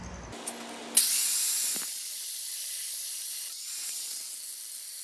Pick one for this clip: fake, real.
real